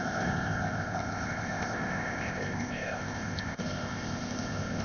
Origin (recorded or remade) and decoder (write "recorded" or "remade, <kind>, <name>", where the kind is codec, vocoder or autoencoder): remade, codec, ZipCodec